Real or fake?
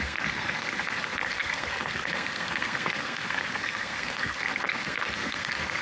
fake